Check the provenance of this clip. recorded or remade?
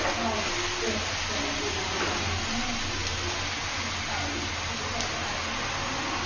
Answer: recorded